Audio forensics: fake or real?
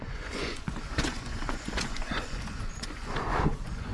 fake